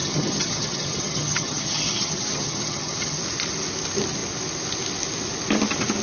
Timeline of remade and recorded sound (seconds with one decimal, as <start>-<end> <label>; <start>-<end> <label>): 0.0-3.2 remade; 3.2-6.0 recorded